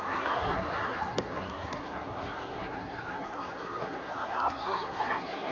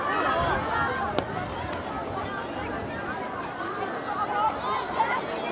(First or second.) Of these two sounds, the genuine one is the second